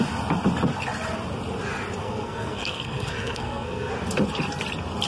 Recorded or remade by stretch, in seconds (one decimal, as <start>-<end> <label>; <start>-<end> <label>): 0.0-2.0 recorded; 2.0-3.9 remade; 3.9-5.1 recorded

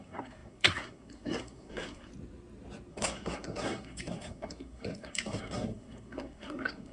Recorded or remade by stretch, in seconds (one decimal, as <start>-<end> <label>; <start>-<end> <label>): 0.0-2.1 remade; 2.1-2.9 recorded; 2.9-6.9 remade

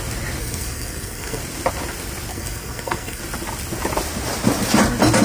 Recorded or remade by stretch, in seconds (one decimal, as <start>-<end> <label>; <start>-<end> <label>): 0.0-0.4 recorded; 0.4-1.4 remade; 1.4-2.3 recorded; 2.3-3.2 remade; 3.2-5.2 recorded

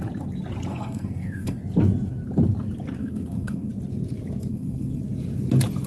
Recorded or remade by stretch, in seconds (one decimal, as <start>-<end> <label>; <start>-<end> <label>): 0.0-0.7 recorded; 0.7-1.6 remade; 1.6-3.0 recorded; 3.0-3.7 remade; 3.7-4.5 recorded; 4.5-5.0 remade; 5.0-5.9 recorded

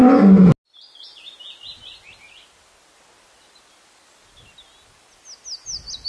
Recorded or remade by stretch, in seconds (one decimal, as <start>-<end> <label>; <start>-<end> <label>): 0.0-6.1 recorded

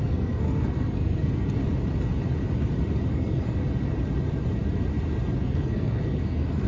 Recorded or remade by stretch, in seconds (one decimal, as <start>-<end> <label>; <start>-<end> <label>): 0.0-1.6 remade; 1.6-3.1 recorded; 3.1-3.6 remade; 3.6-5.4 recorded; 5.4-6.7 remade

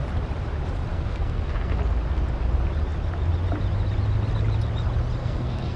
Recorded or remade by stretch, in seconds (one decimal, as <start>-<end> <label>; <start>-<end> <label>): 0.0-0.9 recorded; 0.9-1.8 remade; 1.8-5.2 recorded; 5.2-5.8 remade